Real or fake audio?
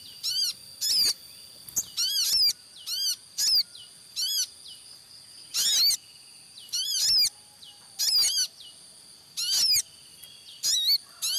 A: real